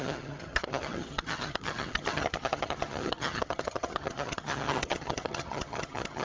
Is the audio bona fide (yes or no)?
no